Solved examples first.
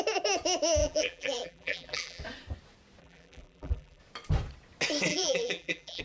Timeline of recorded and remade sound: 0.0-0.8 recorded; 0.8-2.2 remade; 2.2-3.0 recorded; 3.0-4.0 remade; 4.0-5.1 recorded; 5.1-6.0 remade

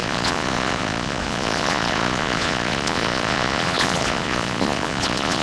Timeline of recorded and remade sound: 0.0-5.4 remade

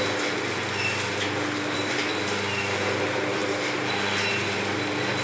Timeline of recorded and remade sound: 0.0-5.2 recorded

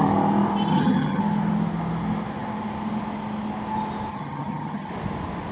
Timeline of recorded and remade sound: 0.0-0.7 recorded; 0.7-1.2 remade; 1.2-4.1 recorded; 4.1-4.9 remade; 4.9-5.5 recorded